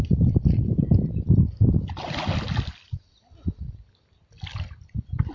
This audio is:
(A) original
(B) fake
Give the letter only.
A